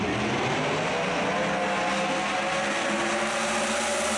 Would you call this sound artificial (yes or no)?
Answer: no